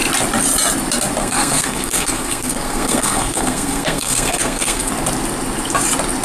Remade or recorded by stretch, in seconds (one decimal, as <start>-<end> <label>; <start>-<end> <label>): 0.0-1.2 recorded; 1.2-4.9 remade; 4.9-6.2 recorded